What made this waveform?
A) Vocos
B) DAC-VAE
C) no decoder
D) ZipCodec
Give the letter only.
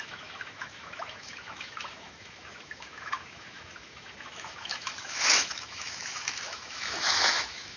B